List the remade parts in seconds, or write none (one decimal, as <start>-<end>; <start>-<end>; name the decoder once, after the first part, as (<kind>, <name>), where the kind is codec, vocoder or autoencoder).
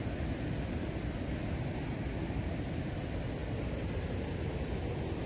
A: none